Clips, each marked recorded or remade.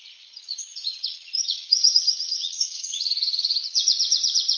remade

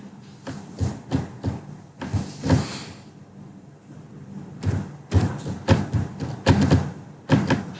recorded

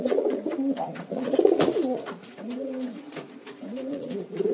remade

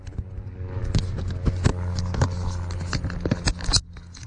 recorded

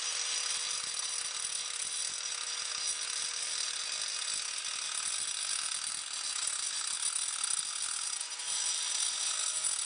recorded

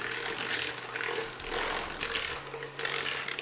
recorded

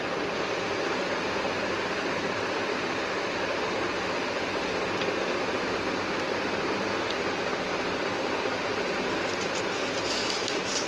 recorded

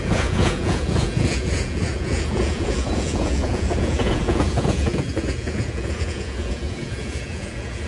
remade